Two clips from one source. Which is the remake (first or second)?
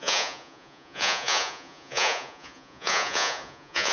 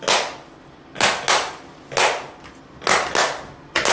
first